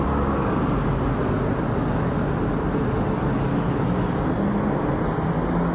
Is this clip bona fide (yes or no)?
yes